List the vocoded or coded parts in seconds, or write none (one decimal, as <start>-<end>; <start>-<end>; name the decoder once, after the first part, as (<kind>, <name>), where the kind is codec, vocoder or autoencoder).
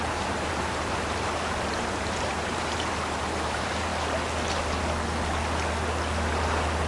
0.0-3.9 (vocoder, BigVGAN v2)